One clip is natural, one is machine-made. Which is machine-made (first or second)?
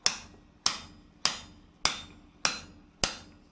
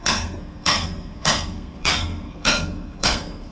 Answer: second